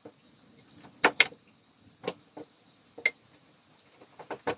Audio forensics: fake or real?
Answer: real